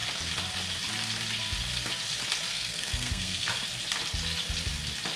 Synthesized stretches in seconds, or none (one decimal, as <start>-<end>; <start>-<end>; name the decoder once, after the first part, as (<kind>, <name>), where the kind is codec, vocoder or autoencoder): 2.5-3.5 (codec, SNAC)